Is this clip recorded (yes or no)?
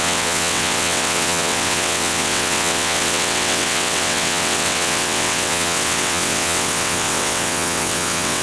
no